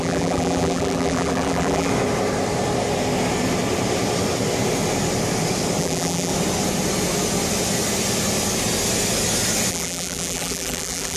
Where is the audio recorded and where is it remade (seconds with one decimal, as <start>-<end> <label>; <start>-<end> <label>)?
0.0-1.9 remade; 1.9-5.8 recorded; 5.8-6.3 remade; 6.3-9.7 recorded; 9.7-11.2 remade